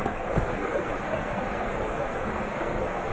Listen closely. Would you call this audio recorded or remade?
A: remade